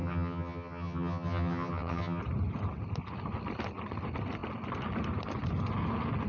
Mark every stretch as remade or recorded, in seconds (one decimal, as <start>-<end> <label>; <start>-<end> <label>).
0.0-2.2 remade; 2.2-6.3 recorded